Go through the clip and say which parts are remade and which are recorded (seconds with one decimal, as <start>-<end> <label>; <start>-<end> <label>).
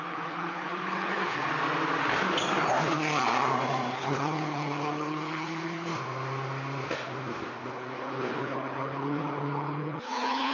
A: 0.0-1.5 remade; 1.5-3.9 recorded; 3.9-5.9 remade; 5.9-7.7 recorded; 7.7-10.5 remade